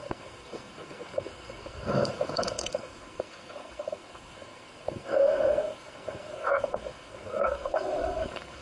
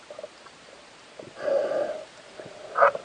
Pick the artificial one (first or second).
first